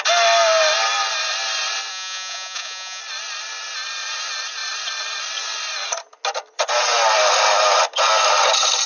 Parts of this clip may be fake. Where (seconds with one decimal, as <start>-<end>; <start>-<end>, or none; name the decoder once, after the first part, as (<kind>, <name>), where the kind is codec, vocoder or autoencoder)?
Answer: 1.9-3.0 (vocoder, Vocos)